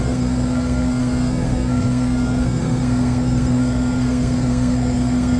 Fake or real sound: fake